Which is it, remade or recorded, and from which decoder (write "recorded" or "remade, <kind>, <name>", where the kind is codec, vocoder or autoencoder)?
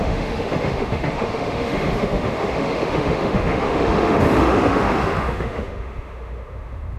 remade, autoencoder, DAC-VAE